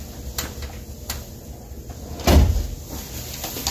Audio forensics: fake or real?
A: real